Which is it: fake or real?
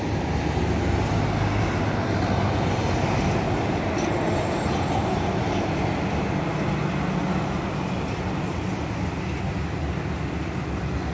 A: real